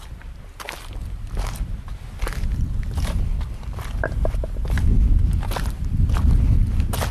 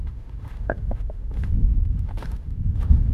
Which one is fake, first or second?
second